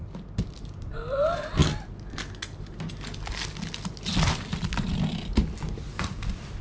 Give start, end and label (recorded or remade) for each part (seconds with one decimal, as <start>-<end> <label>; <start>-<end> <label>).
0.0-6.6 recorded